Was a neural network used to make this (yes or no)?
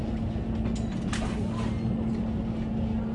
no